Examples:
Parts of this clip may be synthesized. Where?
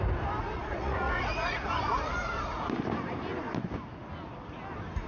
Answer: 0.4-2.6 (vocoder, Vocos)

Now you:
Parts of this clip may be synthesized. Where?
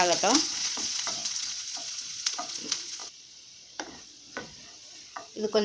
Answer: 0.0-5.6 (vocoder, Vocos)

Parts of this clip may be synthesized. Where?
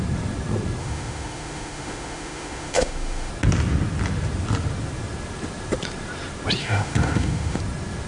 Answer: 0.8-3.3 (autoencoder, DAC-VAE); 6.6-7.6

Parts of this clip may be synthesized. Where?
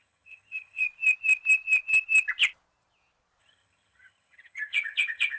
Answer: 0.0-0.8 (vocoder, HiFi-GAN); 3.4-5.4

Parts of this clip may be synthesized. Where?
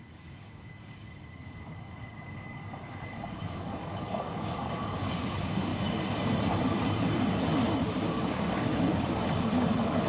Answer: 0.0-5.7 (codec, DAC); 8.0-10.1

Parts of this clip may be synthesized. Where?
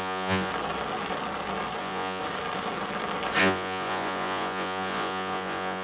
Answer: 0.0-0.5 (vocoder, Vocos); 1.8-2.2; 3.4-5.8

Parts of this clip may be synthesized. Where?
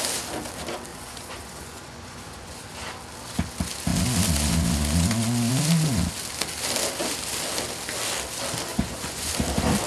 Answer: 0.9-2.6 (vocoder, Vocos); 8.7-9.3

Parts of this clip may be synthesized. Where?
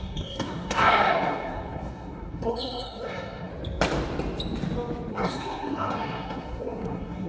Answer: 0.0-3.5 (codec, SNAC); 5.1-7.3